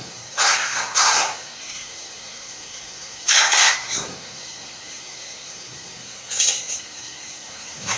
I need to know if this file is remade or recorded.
remade